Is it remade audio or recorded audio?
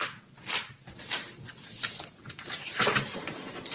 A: recorded